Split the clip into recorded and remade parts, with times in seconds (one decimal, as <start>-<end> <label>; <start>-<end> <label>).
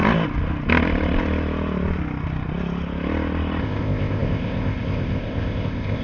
0.0-3.6 recorded; 3.6-6.0 remade